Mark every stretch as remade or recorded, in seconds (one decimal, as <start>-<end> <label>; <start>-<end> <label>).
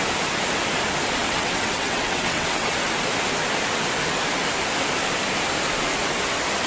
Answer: 0.0-1.2 recorded; 1.2-2.7 remade; 2.7-6.7 recorded